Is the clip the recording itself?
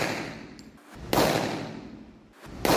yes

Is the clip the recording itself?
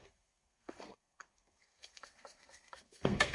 no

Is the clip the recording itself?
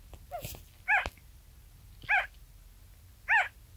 yes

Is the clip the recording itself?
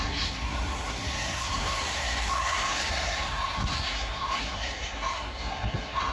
no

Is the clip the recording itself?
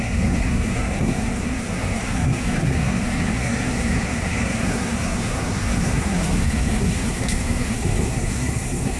no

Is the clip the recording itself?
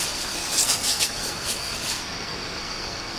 no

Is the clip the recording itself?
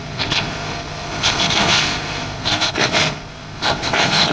no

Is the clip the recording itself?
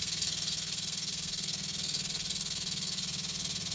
no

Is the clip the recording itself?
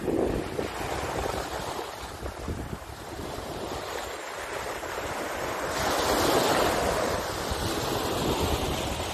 yes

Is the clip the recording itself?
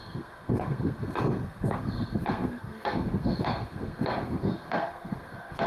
no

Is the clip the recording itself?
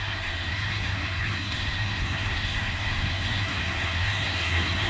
no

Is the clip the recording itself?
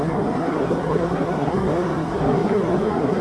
no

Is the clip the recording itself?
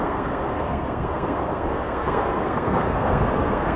no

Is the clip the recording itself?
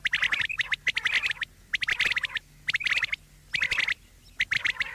yes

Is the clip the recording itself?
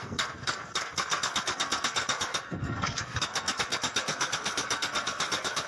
no